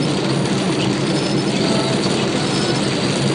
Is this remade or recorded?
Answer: recorded